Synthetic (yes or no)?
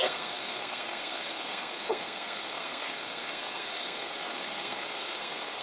yes